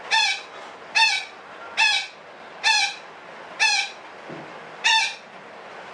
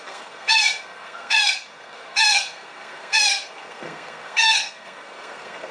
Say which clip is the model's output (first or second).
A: second